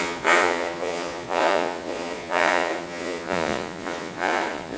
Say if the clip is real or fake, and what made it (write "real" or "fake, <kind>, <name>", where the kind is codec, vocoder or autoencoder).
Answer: fake, vocoder, Vocos